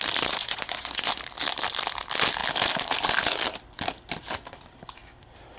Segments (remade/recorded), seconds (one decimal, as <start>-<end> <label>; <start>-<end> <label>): 0.0-0.4 recorded; 0.4-1.1 remade; 1.1-5.6 recorded